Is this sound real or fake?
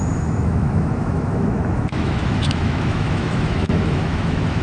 fake